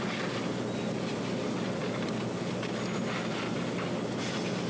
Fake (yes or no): no